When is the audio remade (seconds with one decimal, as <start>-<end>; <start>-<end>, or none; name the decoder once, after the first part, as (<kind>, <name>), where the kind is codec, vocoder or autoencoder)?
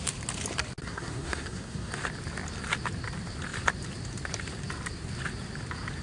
0.8-1.9 (codec, SNAC)